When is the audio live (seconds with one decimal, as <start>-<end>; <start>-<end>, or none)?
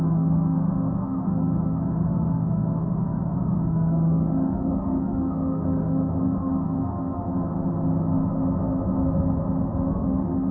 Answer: 7.3-9.9